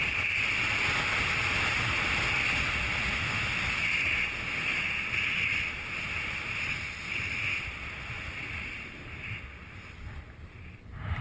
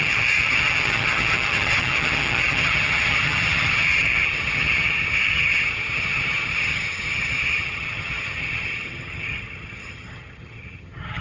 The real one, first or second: first